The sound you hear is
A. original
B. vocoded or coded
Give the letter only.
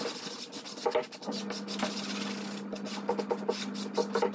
A